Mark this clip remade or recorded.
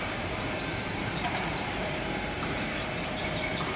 remade